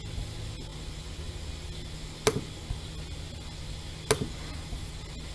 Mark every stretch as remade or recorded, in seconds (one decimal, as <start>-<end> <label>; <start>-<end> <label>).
0.0-5.3 recorded